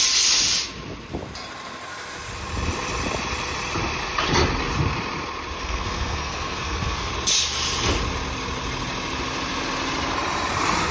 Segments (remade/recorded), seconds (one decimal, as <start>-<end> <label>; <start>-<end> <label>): 0.0-5.6 recorded; 5.6-7.1 remade; 7.1-10.9 recorded